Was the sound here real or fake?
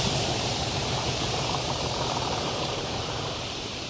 fake